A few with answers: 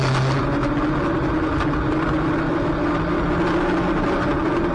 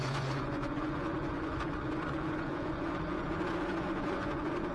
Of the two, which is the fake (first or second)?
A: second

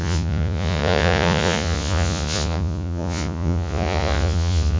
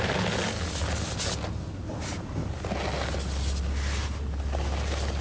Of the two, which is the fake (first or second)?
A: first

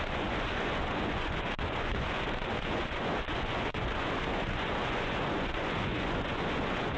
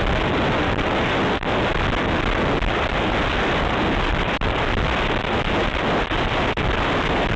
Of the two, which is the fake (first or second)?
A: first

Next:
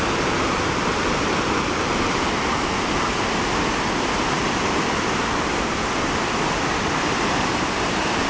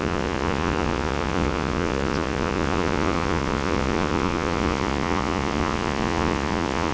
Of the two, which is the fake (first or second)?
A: second